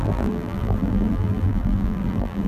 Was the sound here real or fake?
fake